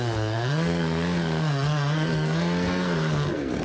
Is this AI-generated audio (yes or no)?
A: yes